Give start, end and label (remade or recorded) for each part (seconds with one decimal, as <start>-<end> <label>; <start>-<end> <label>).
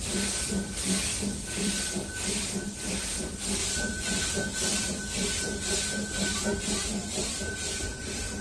0.0-1.1 recorded; 1.1-2.5 remade; 2.5-3.6 recorded; 3.6-4.2 remade; 4.2-7.0 recorded; 7.0-8.4 remade